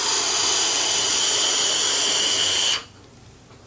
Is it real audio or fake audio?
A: real